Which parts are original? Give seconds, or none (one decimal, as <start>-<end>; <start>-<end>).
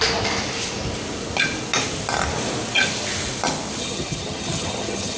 0.0-3.8